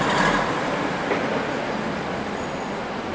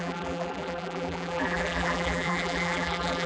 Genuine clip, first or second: first